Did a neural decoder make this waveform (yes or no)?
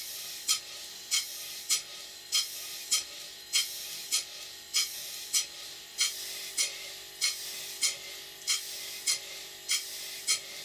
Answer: no